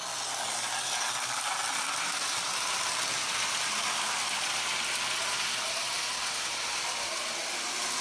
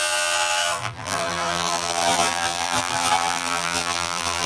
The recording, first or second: first